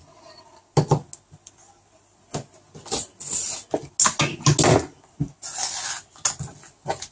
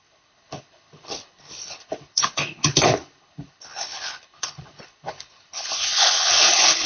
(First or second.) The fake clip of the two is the second